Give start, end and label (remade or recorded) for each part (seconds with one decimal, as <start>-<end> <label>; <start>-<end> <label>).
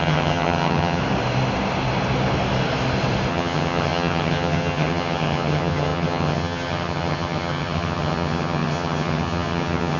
0.0-1.0 remade; 1.0-3.3 recorded; 3.3-10.0 remade